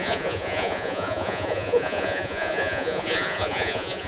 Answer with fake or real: fake